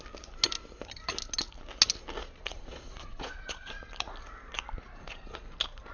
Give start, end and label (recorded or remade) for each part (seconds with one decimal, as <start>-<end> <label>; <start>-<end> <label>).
0.0-2.2 recorded; 2.2-3.9 remade; 3.9-4.8 recorded; 4.8-5.4 remade; 5.4-5.9 recorded